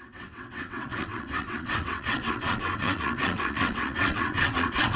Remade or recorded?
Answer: remade